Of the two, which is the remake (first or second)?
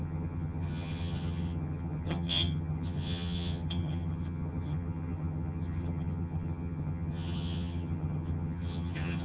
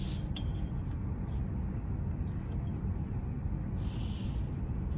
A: first